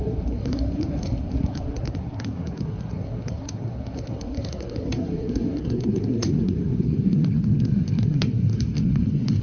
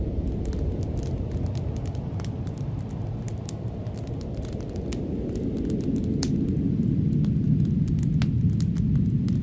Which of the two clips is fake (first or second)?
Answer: first